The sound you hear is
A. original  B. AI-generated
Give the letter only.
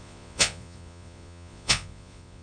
B